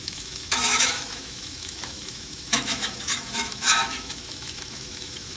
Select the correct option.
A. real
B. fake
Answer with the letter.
B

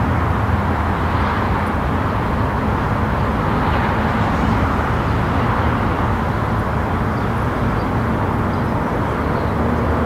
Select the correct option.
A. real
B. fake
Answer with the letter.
A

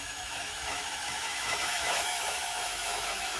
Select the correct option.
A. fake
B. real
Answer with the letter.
A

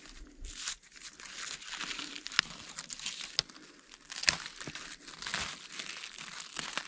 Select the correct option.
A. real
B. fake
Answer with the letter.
A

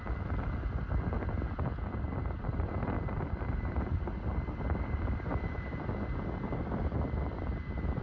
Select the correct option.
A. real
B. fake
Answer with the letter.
A